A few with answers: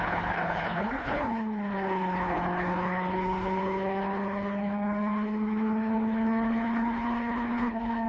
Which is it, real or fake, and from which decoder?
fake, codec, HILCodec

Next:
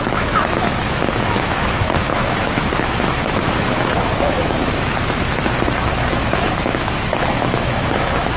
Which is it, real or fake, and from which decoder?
fake, autoencoder, DAC-VAE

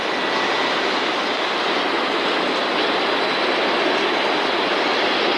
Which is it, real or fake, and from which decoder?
real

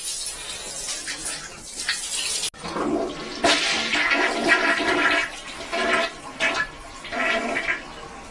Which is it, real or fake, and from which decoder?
real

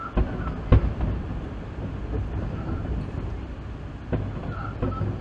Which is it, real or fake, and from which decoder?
real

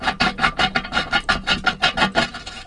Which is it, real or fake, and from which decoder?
real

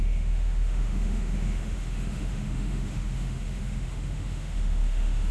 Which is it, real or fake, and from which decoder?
fake, autoencoder, DAC-VAE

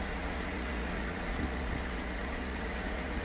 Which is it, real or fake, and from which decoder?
fake, vocoder, Vocos